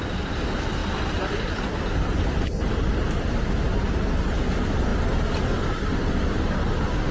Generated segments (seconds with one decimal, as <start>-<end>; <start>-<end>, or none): none